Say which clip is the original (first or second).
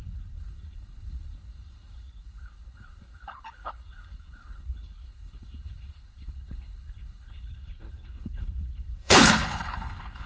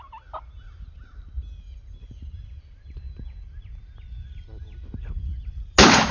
second